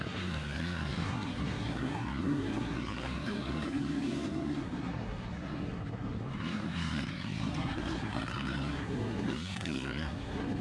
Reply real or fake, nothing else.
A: fake